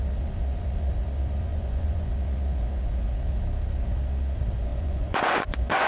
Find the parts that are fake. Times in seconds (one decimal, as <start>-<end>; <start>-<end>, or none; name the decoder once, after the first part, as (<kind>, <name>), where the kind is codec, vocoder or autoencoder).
1.5-2.1 (vocoder, Vocos); 4.7-5.9

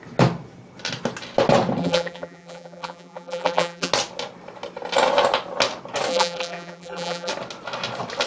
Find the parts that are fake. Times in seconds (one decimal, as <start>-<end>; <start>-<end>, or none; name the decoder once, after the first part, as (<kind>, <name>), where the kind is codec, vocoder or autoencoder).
1.8-3.9 (vocoder, BigVGAN v2); 6.1-7.3

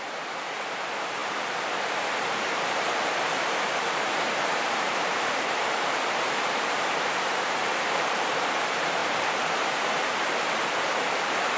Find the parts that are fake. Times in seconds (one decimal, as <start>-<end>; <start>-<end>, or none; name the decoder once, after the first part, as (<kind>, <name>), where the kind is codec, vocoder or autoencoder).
0.0-9.0 (vocoder, BigVGAN v2); 9.5-11.6

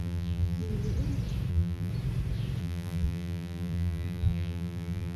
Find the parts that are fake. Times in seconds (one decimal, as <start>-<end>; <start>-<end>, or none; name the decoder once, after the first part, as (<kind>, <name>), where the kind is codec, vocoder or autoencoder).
0.0-0.7 (vocoder, BigVGAN v2); 1.5-1.9; 2.6-5.2

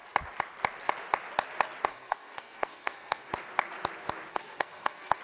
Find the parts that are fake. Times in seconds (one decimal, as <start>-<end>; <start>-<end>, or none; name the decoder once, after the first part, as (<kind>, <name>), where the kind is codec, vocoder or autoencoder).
1.9-3.3 (codec, SNAC); 4.3-5.2

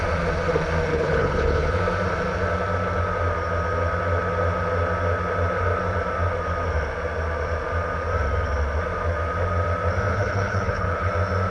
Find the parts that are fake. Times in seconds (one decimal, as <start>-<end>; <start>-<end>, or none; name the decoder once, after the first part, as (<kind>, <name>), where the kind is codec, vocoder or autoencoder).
0.9-1.8 (codec, HILCodec); 10.1-11.1